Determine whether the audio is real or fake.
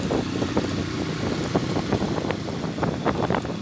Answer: real